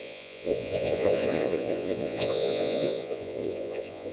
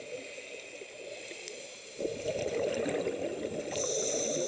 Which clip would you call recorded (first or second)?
second